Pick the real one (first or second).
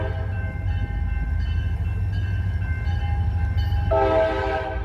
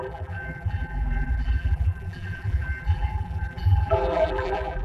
first